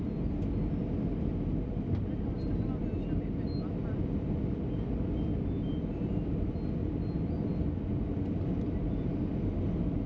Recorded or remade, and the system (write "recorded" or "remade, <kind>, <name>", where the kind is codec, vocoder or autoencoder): recorded